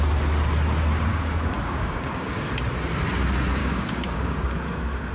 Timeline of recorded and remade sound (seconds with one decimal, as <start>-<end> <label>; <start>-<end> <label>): 0.0-1.1 recorded; 1.1-2.5 remade; 2.5-3.6 recorded; 3.6-5.1 remade